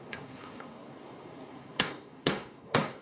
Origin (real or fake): fake